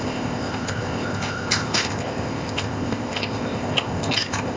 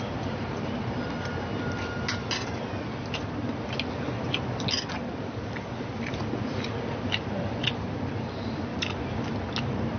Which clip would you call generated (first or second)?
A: first